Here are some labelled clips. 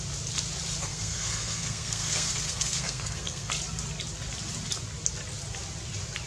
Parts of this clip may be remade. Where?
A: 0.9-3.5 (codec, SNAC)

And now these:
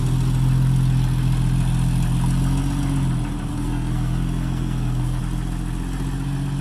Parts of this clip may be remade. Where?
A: 3.5-5.2 (codec, SNAC)

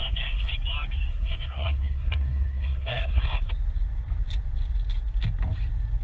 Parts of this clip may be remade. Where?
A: 0.0-0.5 (codec, SNAC); 1.1-3.5

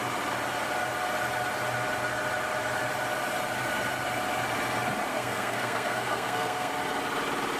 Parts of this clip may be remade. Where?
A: 5.1-6.7 (codec, SNAC)

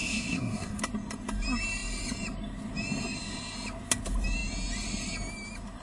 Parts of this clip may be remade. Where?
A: 0.0-0.8 (codec, SNAC)

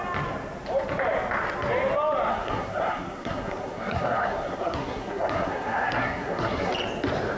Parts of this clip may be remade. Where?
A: 2.3-6.7 (codec, SNAC)